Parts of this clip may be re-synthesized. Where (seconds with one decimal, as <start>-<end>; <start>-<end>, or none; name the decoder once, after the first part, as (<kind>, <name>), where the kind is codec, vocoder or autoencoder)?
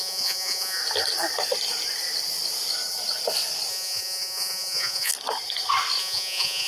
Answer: 0.0-0.8 (vocoder, Vocos); 3.7-5.1; 6.0-6.7